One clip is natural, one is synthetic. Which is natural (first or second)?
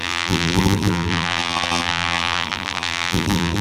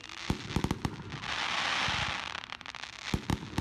second